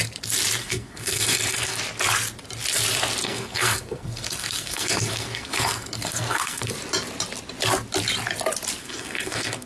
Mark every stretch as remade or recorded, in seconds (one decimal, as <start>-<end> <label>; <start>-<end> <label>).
0.0-0.6 recorded; 0.6-1.8 remade; 1.8-3.2 recorded; 3.2-6.7 remade; 6.7-8.8 recorded; 8.8-9.7 remade